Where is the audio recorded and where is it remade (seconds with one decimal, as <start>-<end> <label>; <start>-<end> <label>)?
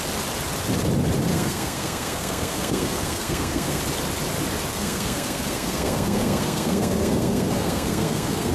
0.0-1.3 recorded; 1.3-3.8 remade; 3.8-4.7 recorded; 4.7-8.5 remade